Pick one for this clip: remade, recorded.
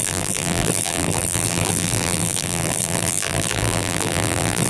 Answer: remade